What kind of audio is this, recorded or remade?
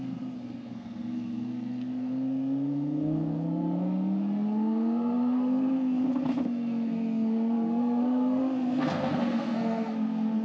remade